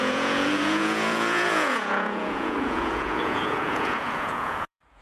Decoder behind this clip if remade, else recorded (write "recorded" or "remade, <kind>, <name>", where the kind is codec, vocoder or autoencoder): remade, vocoder, Vocos